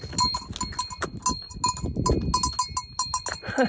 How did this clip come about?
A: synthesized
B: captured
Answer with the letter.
B